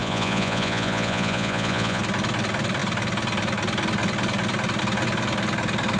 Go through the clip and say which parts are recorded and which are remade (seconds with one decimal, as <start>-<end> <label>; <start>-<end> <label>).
0.0-2.0 remade; 2.0-6.0 recorded